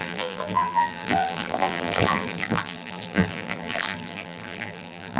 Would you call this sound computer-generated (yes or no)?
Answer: yes